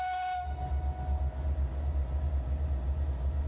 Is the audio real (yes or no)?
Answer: yes